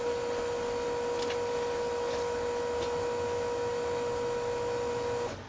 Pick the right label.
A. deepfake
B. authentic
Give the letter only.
B